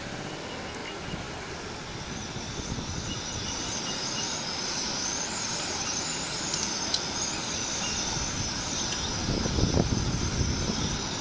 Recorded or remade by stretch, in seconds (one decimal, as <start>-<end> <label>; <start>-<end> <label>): 0.0-11.2 recorded